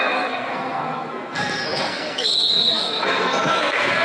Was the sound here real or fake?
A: fake